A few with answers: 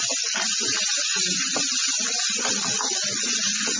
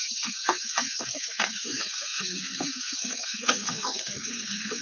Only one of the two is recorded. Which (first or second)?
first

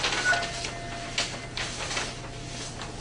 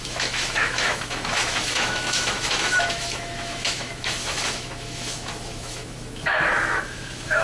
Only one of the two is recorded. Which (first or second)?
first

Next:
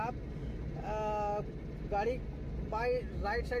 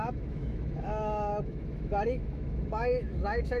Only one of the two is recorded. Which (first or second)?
first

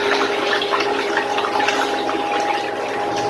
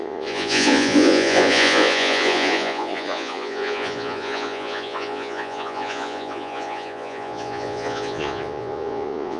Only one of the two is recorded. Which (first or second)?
first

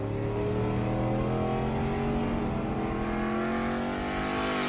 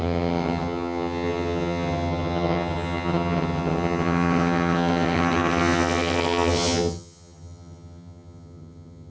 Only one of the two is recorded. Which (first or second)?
first